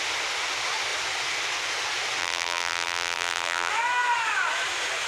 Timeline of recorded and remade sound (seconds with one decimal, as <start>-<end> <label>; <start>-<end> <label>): 0.0-2.2 recorded; 2.2-3.7 remade; 3.7-5.1 recorded